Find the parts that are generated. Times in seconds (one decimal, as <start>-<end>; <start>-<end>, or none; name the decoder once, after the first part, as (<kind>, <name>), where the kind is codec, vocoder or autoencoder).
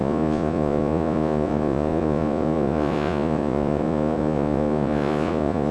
0.0-5.7 (vocoder, Vocos)